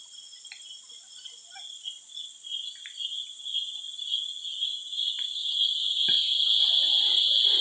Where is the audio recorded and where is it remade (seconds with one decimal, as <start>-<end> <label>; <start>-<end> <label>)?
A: 0.0-7.6 recorded